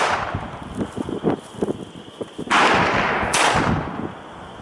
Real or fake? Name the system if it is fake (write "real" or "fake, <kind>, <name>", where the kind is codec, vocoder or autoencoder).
real